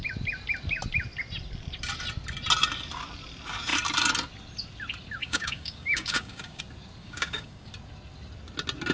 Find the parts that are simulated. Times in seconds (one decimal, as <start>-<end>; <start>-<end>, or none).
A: 5.2-6.6; 7.0-7.7